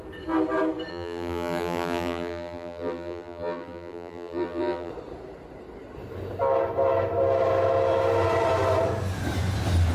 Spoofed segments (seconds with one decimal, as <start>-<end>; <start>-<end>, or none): 0.9-4.9